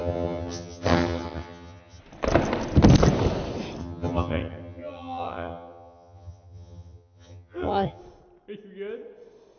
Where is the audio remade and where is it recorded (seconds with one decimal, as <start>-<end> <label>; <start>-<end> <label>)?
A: 0.0-2.0 remade; 2.0-3.8 recorded; 3.8-8.0 remade; 8.0-9.6 recorded